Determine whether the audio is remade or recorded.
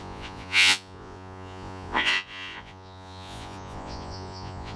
remade